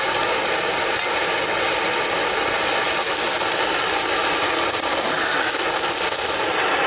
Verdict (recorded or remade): recorded